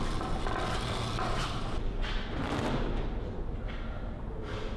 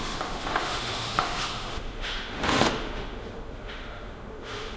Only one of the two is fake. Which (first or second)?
second